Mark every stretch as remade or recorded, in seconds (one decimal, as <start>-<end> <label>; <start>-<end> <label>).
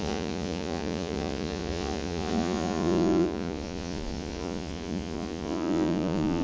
0.0-6.4 remade